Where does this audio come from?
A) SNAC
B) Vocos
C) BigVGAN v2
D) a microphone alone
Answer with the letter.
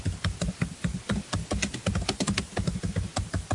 D